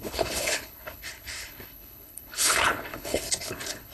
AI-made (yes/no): yes